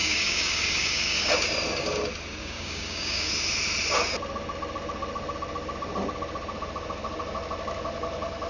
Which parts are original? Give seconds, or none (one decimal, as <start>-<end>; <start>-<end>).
1.3-2.4; 3.3-8.5